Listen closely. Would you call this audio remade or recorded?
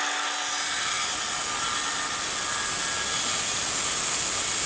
recorded